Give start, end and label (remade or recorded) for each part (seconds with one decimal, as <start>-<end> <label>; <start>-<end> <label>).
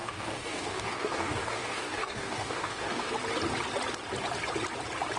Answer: 0.0-3.1 remade; 3.1-5.2 recorded